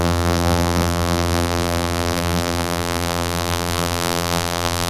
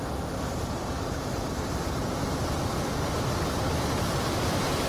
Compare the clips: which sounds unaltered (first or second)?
second